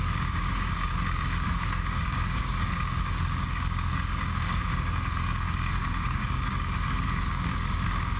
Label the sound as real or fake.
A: fake